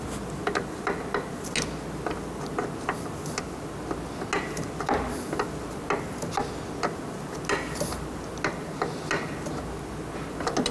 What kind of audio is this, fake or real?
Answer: real